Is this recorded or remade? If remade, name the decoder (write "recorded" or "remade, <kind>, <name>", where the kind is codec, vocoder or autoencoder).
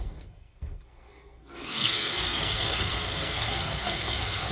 remade, codec, SNAC